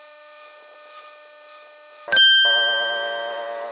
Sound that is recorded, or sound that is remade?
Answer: recorded